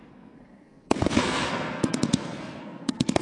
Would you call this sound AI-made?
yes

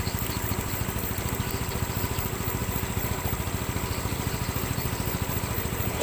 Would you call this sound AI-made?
no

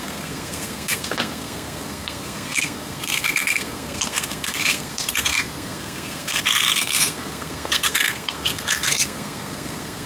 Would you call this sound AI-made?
yes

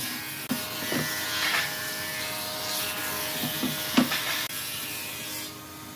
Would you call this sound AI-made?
no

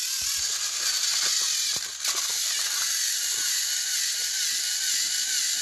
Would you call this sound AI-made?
no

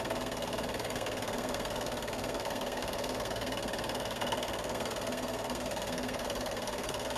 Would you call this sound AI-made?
yes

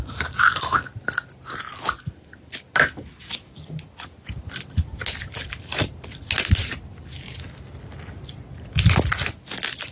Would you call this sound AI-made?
no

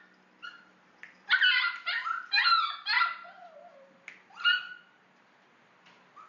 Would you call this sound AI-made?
no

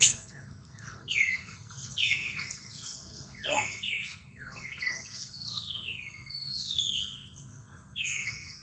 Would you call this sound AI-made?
yes